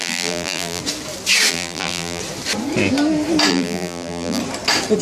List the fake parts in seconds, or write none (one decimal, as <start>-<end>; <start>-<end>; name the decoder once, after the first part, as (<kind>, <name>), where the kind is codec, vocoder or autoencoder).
0.0-0.8 (vocoder, BigVGAN v2); 1.5-2.2; 3.5-4.4